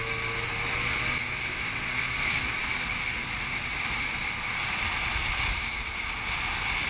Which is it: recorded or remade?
recorded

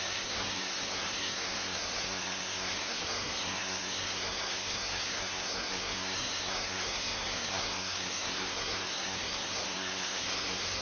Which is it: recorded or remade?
remade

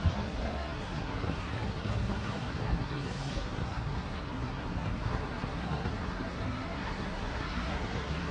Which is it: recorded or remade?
remade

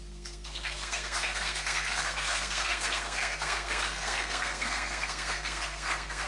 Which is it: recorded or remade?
remade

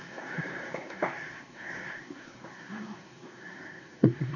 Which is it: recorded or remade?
remade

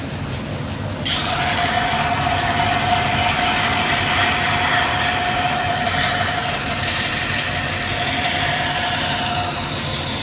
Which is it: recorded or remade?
recorded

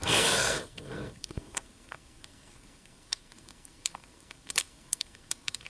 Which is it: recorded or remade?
remade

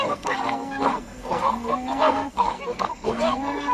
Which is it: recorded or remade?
remade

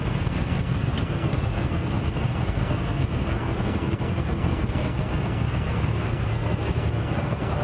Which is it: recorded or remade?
remade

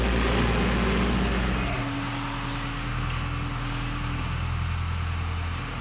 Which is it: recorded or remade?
recorded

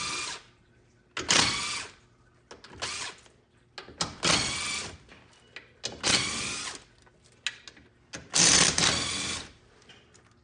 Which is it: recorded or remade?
recorded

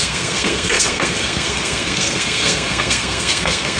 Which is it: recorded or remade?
remade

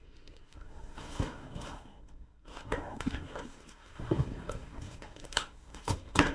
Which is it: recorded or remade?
remade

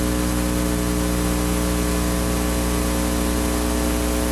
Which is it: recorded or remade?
recorded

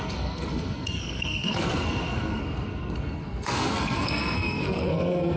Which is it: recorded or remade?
remade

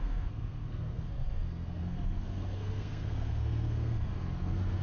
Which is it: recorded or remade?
remade